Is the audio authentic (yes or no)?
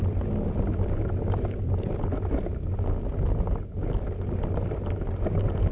yes